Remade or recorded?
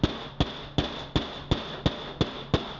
recorded